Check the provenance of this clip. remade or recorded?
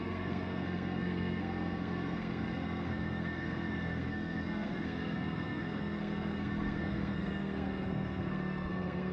remade